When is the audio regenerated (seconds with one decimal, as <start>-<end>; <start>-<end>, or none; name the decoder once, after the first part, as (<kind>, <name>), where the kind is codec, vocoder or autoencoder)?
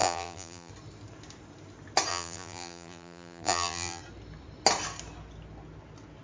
0.0-0.7 (vocoder, BigVGAN v2); 2.1-4.0